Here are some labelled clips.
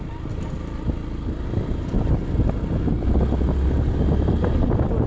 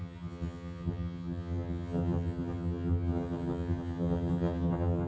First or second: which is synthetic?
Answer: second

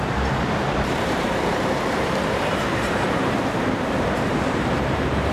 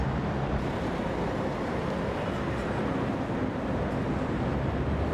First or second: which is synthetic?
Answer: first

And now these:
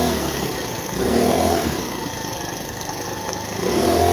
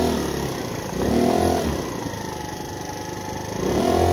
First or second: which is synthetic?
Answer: first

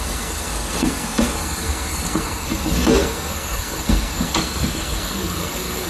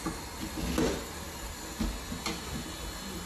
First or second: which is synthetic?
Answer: first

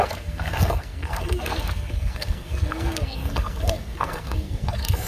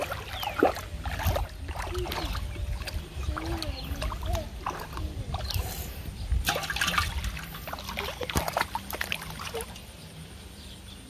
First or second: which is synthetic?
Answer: first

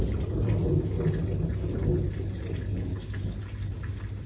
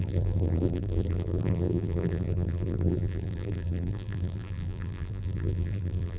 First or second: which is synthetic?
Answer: second